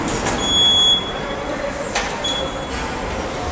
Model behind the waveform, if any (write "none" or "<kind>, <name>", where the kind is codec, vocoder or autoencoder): none